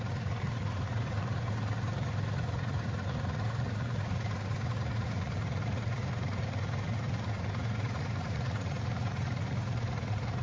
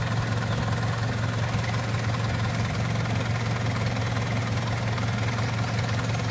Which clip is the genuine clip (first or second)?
second